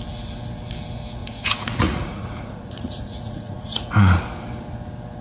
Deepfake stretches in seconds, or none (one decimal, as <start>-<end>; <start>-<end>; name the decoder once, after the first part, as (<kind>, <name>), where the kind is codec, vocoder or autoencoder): 1.2-4.2 (vocoder, Vocos)